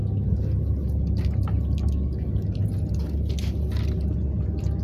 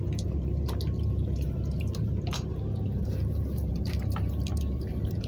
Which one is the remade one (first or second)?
second